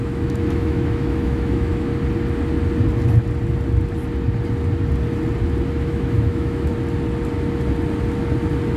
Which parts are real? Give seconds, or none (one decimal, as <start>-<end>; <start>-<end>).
1.9-5.7; 6.7-8.8